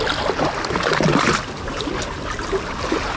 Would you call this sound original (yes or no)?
yes